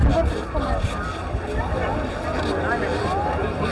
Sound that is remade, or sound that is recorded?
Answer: recorded